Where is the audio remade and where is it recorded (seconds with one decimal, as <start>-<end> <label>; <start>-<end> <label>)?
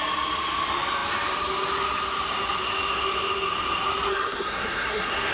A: 0.0-4.1 recorded; 4.1-5.3 remade